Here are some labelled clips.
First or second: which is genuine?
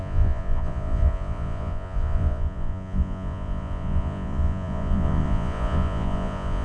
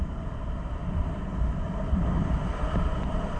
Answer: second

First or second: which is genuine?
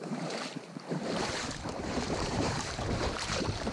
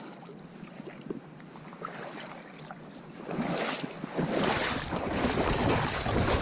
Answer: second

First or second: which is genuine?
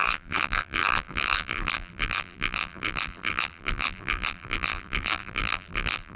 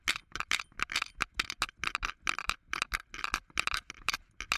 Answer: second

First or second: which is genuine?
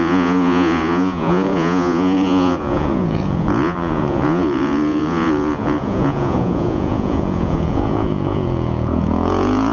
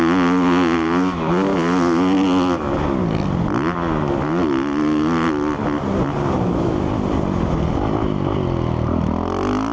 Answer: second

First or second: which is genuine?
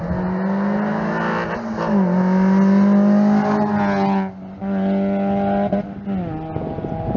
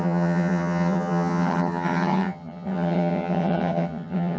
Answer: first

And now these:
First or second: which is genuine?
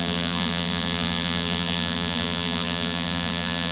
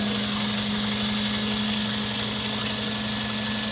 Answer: second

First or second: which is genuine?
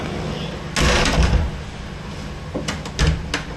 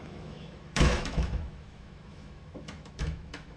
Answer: first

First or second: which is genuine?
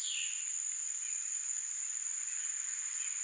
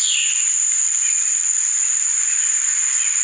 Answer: first